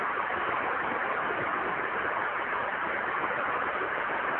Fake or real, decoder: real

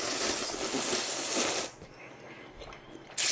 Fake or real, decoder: real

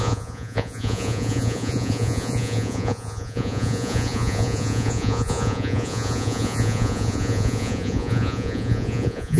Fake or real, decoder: fake, vocoder, Vocos